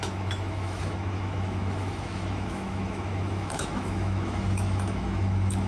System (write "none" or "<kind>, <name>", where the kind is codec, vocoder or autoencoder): autoencoder, DAC-VAE